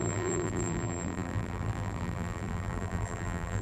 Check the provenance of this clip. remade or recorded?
remade